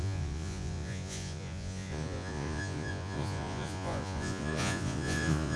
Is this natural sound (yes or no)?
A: no